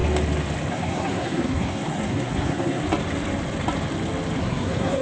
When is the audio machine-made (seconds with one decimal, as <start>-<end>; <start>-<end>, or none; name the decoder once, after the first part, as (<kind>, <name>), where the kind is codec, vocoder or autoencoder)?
0.7-2.8 (codec, SNAC); 4.4-5.0